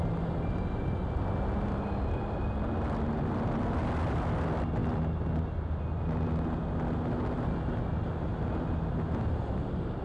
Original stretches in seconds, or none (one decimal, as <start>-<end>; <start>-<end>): 0.0-10.0